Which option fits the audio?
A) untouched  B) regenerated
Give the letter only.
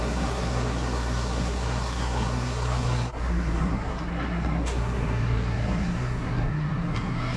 B